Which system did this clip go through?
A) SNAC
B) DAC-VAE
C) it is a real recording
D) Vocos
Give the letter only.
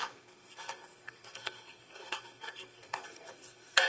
A